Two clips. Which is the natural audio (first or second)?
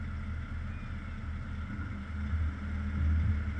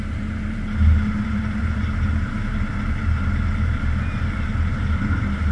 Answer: first